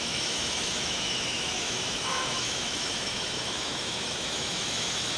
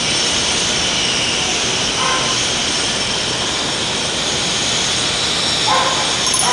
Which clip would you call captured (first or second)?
second